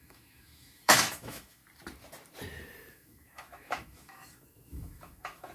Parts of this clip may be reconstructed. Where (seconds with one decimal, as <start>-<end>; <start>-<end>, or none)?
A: 0.0-1.6; 2.9-5.5